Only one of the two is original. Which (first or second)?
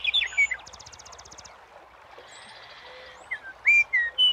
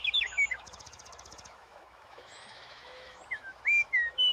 first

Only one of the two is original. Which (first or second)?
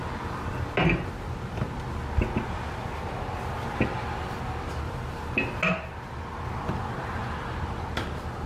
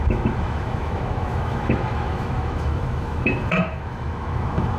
first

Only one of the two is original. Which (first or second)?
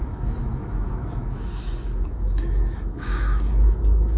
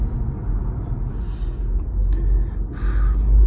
second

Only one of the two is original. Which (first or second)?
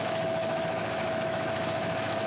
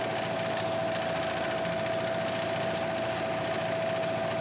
second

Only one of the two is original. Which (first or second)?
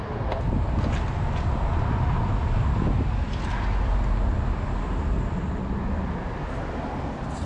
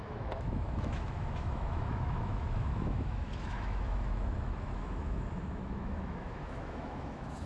first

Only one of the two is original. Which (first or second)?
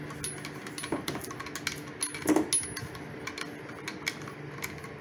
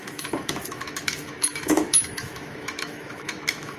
first